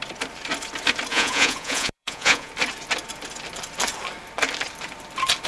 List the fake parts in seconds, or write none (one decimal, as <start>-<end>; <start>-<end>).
1.1-2.5